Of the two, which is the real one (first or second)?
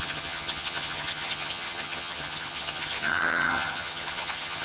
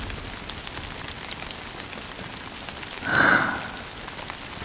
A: second